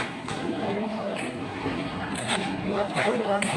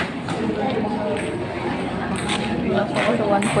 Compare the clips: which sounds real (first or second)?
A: second